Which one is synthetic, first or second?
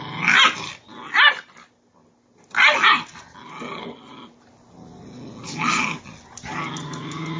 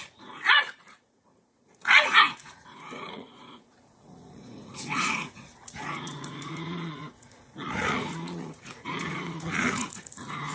second